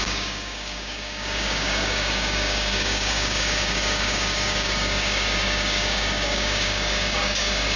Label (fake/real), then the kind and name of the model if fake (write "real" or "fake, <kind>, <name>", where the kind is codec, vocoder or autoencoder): fake, codec, DAC